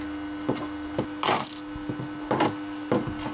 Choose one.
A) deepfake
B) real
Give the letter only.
B